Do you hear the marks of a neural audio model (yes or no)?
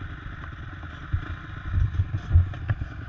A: no